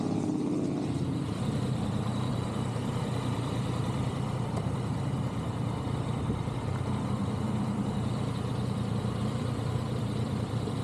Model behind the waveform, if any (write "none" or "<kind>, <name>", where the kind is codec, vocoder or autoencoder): vocoder, BigVGAN v2